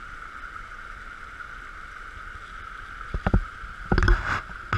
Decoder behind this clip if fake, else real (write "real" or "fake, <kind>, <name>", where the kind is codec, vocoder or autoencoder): real